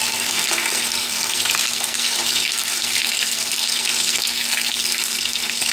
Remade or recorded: remade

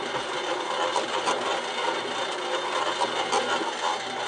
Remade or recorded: recorded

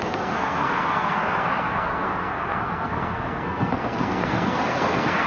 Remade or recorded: remade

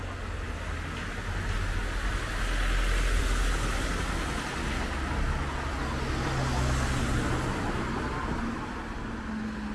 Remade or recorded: recorded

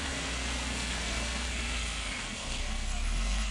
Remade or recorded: remade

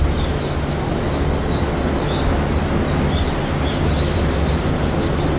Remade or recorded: recorded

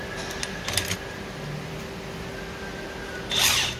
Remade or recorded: recorded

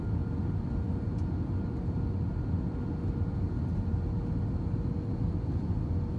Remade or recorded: recorded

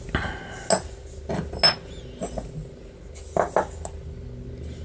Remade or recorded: recorded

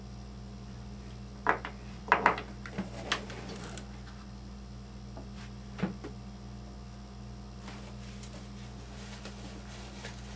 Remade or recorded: recorded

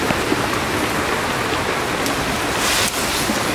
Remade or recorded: recorded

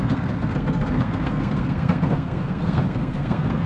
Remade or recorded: remade